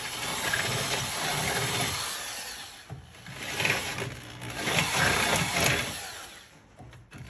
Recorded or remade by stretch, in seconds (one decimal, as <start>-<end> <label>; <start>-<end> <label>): 0.0-1.3 recorded; 1.3-2.8 remade; 2.8-7.3 recorded